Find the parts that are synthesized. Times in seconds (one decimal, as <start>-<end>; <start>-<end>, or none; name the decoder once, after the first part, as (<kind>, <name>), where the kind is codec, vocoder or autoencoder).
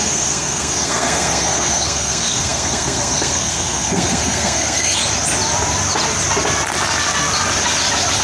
0.0-5.0 (codec, SNAC)